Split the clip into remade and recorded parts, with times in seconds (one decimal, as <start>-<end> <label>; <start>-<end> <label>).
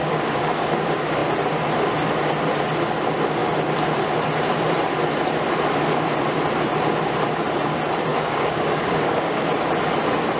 0.0-0.7 remade; 0.7-8.1 recorded; 8.1-9.5 remade; 9.5-10.4 recorded